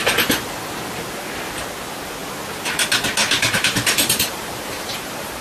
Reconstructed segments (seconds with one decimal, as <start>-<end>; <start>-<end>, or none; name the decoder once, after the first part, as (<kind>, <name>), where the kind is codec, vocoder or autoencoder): 3.2-5.4 (vocoder, BigVGAN v2)